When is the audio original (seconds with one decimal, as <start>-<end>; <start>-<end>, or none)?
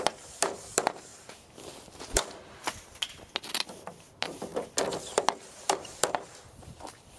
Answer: 1.1-4.0; 4.5-5.5